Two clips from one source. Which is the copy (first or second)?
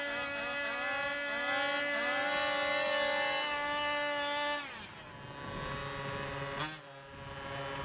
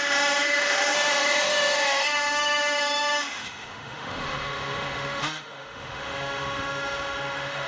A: second